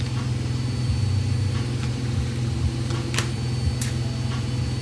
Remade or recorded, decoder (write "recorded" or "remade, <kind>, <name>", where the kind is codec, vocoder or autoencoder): recorded